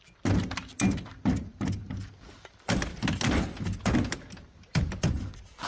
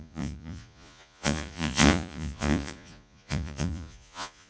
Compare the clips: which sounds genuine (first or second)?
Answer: first